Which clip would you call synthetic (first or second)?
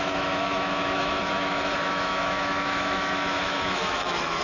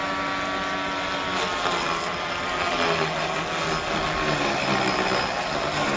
first